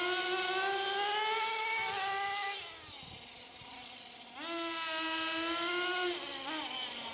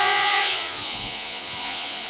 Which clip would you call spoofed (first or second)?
second